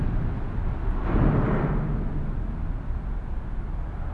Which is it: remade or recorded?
recorded